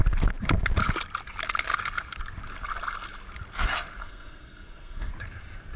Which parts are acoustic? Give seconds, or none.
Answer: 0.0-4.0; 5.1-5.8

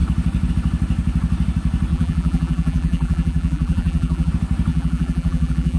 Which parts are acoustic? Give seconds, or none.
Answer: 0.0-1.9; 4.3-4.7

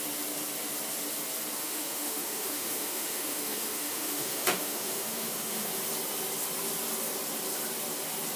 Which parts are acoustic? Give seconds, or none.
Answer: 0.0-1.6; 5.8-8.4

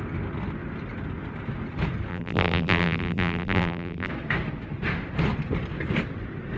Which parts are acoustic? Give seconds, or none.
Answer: 0.0-2.1; 4.1-6.6

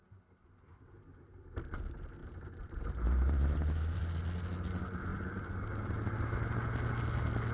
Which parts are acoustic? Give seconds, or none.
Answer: 0.0-2.2; 4.0-7.5

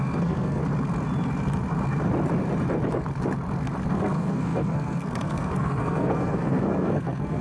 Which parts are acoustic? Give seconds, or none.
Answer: 0.6-3.9